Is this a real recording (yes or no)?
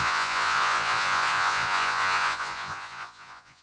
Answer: no